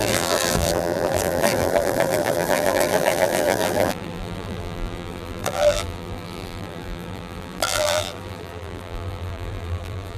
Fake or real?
fake